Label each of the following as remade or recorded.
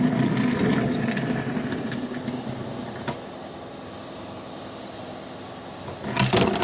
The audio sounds recorded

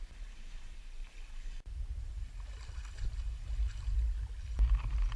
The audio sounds recorded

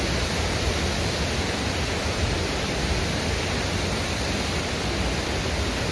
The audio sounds recorded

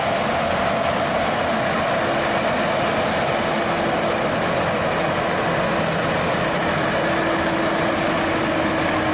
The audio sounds recorded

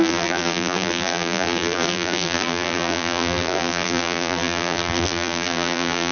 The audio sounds remade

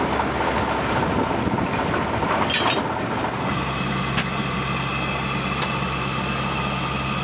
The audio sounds recorded